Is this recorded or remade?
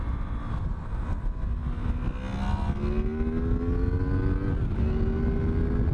recorded